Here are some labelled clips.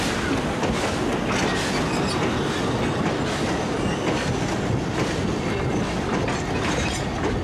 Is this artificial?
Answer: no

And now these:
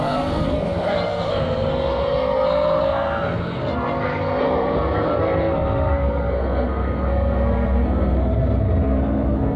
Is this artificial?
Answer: yes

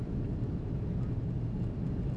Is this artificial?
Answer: no